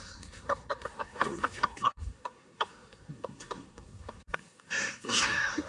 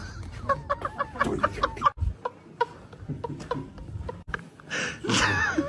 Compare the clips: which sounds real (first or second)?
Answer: second